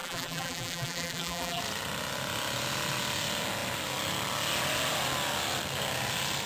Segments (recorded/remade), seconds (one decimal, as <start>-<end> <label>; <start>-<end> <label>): 0.0-1.6 remade; 1.6-6.5 recorded